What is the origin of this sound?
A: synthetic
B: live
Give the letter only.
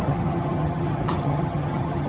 A